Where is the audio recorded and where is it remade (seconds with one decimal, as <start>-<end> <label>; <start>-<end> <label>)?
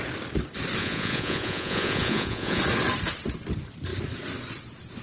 0.0-0.8 recorded; 0.8-2.6 remade; 2.6-5.0 recorded